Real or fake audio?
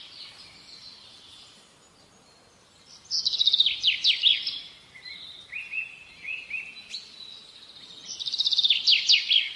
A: real